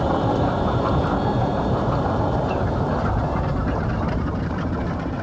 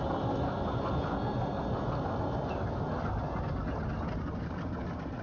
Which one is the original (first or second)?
second